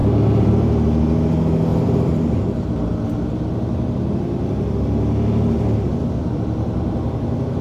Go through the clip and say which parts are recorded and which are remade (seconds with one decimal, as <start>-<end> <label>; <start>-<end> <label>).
0.0-0.5 remade; 0.5-1.7 recorded; 1.7-2.4 remade; 2.4-6.2 recorded; 6.2-6.9 remade; 6.9-7.6 recorded